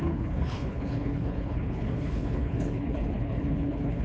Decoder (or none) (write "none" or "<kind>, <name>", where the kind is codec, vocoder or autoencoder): codec, HILCodec